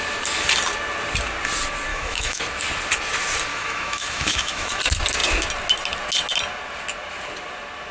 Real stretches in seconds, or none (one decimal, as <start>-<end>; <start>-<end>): 0.0-1.9; 2.4-3.5; 4.8-7.9

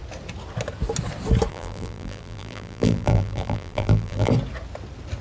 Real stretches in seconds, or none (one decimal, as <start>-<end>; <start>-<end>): 0.0-1.5; 4.3-5.2

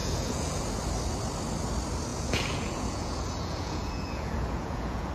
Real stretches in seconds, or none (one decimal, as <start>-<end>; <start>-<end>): 0.6-2.1

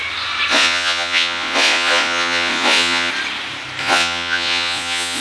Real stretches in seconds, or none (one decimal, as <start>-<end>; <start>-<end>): 0.0-0.5; 3.1-3.8

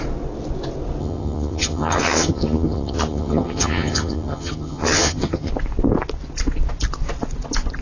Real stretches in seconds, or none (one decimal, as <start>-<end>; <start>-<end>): 0.0-1.0; 5.5-7.8

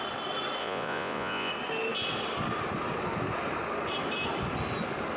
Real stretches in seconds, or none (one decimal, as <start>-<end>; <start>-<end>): 0.0-0.6; 1.5-5.2

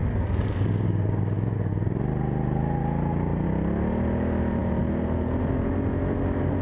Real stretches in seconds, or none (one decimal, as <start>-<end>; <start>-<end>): 1.2-6.6